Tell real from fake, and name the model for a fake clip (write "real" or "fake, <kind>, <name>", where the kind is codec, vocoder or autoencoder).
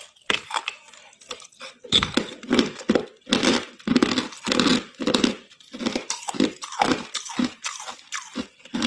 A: real